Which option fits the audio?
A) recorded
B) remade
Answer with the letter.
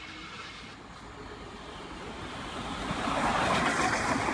A